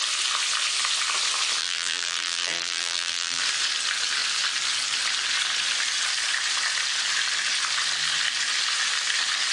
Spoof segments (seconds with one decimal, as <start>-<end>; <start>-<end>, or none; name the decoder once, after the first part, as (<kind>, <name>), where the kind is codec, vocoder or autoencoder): 1.6-3.4 (vocoder, BigVGAN v2)